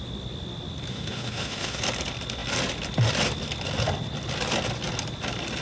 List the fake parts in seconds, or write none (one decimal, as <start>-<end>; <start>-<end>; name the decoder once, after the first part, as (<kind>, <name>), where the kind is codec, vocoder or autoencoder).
0.9-1.8 (autoencoder, DAC-VAE)